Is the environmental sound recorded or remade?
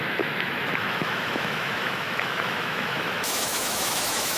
remade